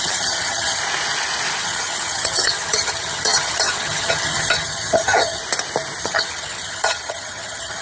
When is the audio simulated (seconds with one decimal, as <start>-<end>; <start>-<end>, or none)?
0.0-0.8; 1.6-5.4; 6.0-7.8